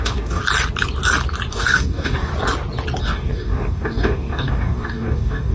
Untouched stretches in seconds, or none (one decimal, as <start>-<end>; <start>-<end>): 0.4-1.5; 2.3-3.0